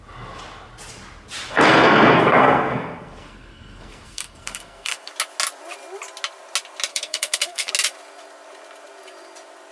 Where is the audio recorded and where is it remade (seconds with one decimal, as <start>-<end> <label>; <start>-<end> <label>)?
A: 0.0-1.5 recorded; 1.5-5.1 remade; 5.1-6.9 recorded; 6.9-7.7 remade; 7.7-9.7 recorded